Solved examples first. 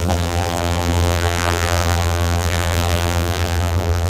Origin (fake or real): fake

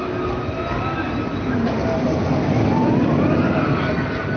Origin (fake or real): real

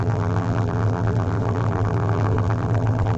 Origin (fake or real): fake